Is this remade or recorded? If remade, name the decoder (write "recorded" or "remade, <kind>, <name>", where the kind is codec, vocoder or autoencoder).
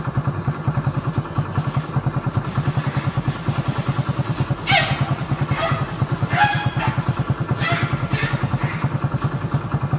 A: recorded